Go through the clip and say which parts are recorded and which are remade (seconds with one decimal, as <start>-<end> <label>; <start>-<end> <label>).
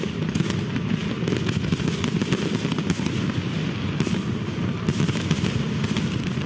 0.0-6.5 recorded